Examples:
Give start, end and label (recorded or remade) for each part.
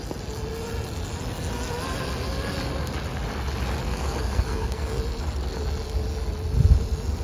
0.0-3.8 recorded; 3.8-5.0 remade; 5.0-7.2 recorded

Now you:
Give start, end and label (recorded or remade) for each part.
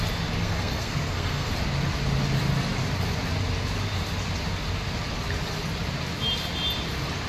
0.0-0.4 recorded; 0.4-1.5 remade; 1.5-7.3 recorded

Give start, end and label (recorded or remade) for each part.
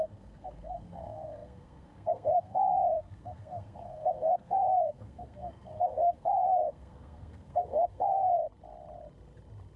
0.0-8.4 remade; 8.4-9.8 recorded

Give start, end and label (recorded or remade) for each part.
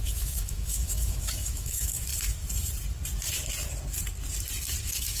0.0-2.1 remade; 2.1-4.8 recorded; 4.8-5.2 remade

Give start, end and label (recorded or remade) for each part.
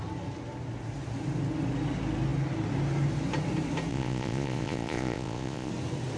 0.0-3.9 recorded; 3.9-5.7 remade; 5.7-6.2 recorded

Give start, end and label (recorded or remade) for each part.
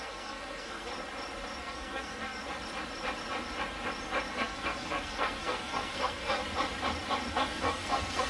0.0-0.9 remade; 0.9-1.6 recorded; 1.6-2.4 remade; 2.4-4.3 recorded; 4.3-6.4 remade; 6.4-7.3 recorded; 7.3-8.3 remade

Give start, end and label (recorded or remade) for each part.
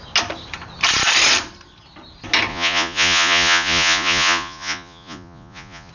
0.0-2.5 recorded; 2.5-5.9 remade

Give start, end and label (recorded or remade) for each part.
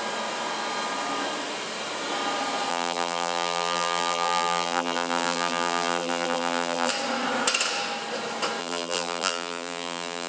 0.0-2.7 recorded; 2.7-6.9 remade; 6.9-8.6 recorded; 8.6-10.3 remade